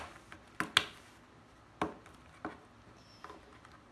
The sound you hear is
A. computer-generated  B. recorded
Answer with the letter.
B